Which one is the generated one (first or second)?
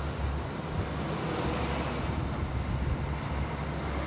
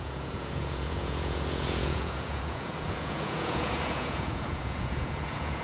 second